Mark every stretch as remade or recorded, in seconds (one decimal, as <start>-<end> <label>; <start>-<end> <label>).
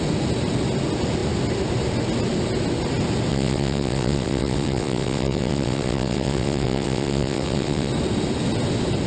0.0-3.3 recorded; 3.3-7.9 remade; 7.9-9.1 recorded